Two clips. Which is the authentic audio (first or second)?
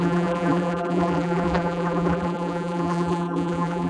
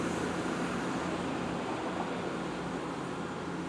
second